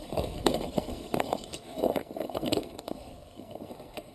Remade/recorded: remade